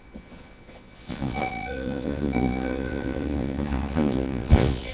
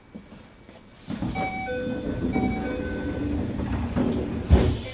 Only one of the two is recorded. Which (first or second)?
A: second